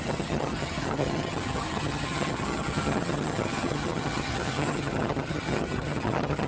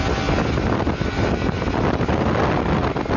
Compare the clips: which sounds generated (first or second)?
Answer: first